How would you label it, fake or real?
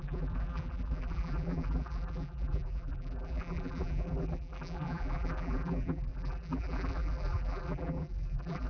fake